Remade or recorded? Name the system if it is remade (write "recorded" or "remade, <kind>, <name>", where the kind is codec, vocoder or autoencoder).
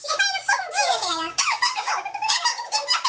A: remade, codec, DAC